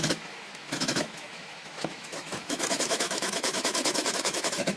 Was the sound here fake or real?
fake